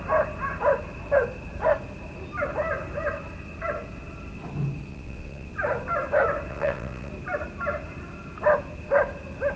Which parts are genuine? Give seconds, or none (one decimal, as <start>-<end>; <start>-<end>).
0.0-4.9; 5.5-6.5; 7.1-9.6